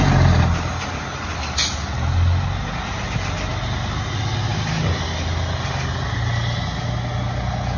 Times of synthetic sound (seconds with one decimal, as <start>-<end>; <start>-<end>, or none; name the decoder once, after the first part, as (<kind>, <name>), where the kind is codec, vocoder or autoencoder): none